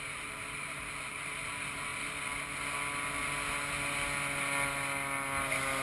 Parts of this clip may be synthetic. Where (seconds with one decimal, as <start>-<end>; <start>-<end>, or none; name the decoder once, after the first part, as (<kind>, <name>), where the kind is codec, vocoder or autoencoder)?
none